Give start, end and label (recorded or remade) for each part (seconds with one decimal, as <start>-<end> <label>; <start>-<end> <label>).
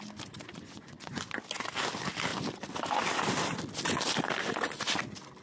0.0-0.5 recorded; 0.5-1.2 remade; 1.2-5.4 recorded